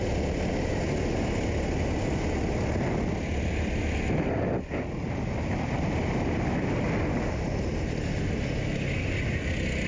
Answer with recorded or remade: recorded